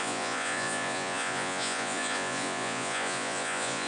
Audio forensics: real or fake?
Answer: fake